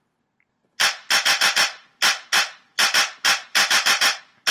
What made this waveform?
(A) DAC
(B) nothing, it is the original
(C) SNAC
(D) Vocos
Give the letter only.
B